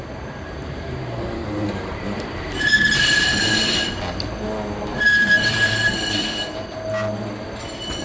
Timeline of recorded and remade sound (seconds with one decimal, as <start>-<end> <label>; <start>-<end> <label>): 0.0-3.7 remade; 3.7-4.9 recorded; 4.9-6.5 remade; 6.5-8.0 recorded